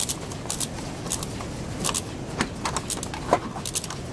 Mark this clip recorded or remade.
recorded